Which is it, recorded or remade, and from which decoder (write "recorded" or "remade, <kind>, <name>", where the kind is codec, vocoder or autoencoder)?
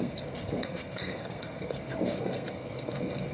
remade, codec, SNAC